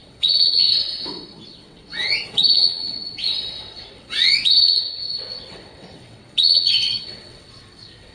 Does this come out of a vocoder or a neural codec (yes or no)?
yes